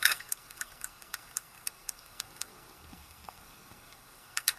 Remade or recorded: remade